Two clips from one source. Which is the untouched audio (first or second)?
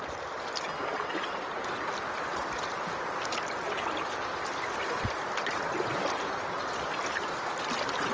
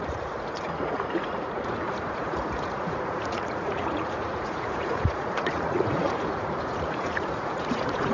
first